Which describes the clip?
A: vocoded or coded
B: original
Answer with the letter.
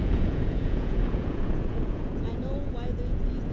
A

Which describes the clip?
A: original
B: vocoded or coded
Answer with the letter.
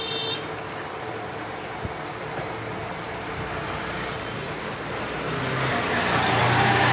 A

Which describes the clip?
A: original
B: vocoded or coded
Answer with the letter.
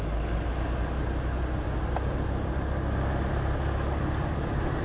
A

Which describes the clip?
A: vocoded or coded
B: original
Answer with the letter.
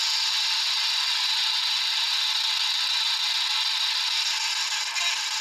B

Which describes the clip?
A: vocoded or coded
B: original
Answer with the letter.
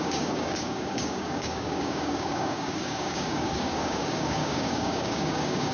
A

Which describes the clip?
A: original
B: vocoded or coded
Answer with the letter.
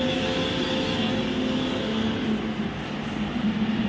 A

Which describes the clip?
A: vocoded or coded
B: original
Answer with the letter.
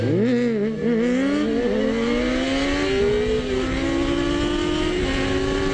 B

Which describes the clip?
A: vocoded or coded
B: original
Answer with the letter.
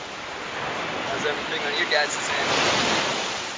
B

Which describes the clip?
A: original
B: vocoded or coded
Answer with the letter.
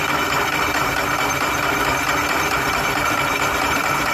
B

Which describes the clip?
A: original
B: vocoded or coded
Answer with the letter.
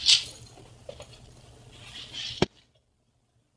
A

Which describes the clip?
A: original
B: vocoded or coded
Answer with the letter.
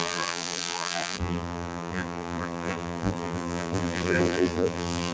B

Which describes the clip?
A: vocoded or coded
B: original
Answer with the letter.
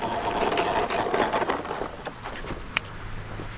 B